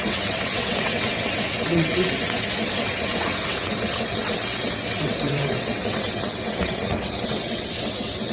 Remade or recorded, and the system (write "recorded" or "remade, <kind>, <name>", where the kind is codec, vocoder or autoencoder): remade, vocoder, WaveNeXt